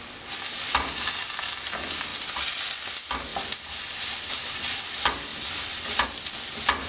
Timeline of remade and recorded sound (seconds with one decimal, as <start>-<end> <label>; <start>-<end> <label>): 0.0-2.1 recorded; 2.1-2.6 remade; 2.6-5.3 recorded; 5.3-6.4 remade; 6.4-6.9 recorded